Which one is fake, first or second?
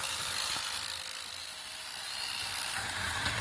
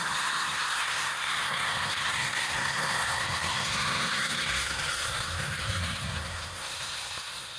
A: second